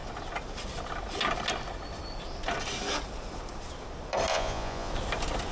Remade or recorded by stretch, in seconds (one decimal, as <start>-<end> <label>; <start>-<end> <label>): 0.0-4.3 recorded; 4.3-4.9 remade; 4.9-5.5 recorded